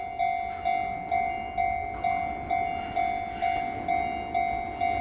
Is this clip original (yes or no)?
yes